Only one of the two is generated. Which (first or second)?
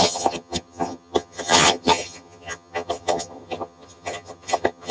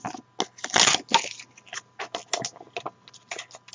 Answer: first